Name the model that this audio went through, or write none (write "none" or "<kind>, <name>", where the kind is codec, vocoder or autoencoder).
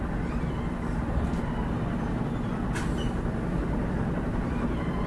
none